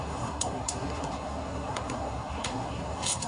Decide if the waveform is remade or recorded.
remade